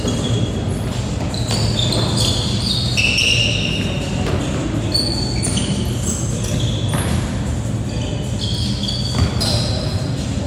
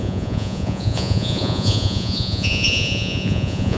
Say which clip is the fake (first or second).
second